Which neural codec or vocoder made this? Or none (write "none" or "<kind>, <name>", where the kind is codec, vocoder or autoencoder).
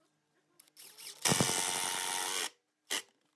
none